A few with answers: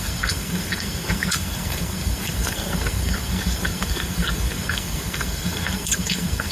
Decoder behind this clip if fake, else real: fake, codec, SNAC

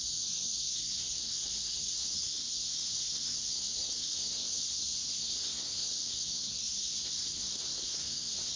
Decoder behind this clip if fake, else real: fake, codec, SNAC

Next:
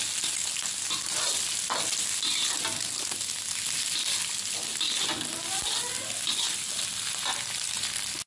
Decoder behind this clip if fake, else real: real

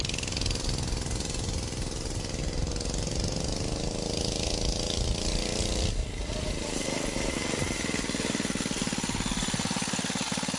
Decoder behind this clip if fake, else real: real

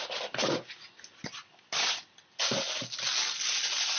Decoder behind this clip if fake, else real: real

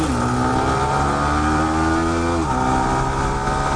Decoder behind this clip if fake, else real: real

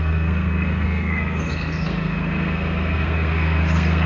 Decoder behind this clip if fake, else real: fake, codec, SNAC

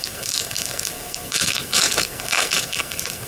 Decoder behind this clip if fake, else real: fake, codec, SNAC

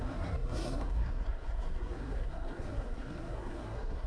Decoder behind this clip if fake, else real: fake, codec, SNAC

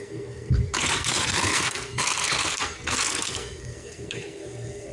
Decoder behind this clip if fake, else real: fake, codec, SNAC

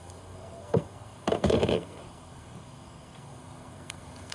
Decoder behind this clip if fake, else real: fake, codec, SNAC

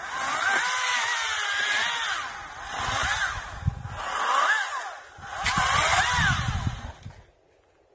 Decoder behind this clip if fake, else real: real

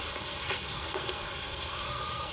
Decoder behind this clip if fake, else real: fake, codec, SNAC